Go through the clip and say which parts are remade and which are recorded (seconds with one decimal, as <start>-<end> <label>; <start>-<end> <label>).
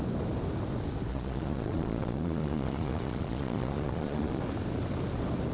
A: 0.0-1.1 recorded; 1.1-4.4 remade; 4.4-5.5 recorded